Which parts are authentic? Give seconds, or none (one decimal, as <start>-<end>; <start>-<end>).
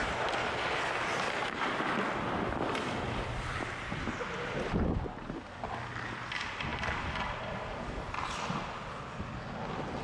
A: 0.0-10.0